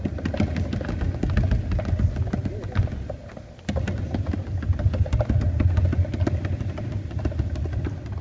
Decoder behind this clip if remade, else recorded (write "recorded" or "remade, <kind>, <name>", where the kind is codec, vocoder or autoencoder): recorded